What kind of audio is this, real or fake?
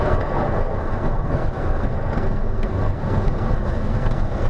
fake